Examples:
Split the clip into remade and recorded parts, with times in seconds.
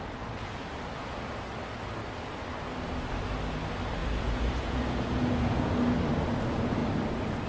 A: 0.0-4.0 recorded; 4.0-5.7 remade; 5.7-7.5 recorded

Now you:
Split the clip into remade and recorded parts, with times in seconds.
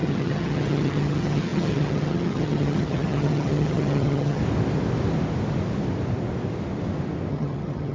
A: 0.0-4.4 remade; 4.4-7.3 recorded; 7.3-7.9 remade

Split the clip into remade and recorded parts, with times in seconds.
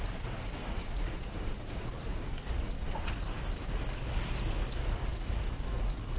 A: 0.0-0.6 recorded; 0.6-3.2 remade; 3.2-5.1 recorded; 5.1-6.2 remade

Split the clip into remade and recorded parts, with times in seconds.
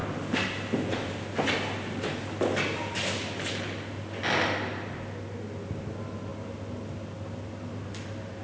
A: 0.0-8.4 recorded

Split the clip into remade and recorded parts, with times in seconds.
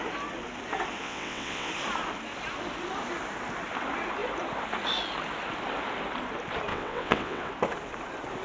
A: 0.0-1.0 recorded; 1.0-1.7 remade; 1.7-6.7 recorded; 6.7-7.5 remade; 7.5-8.4 recorded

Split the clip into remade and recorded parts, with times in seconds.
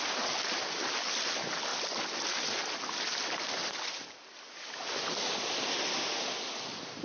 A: 0.0-7.0 recorded